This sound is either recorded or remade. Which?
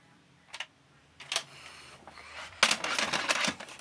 recorded